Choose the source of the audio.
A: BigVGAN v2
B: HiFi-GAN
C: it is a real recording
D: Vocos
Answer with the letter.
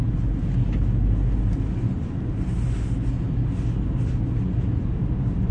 C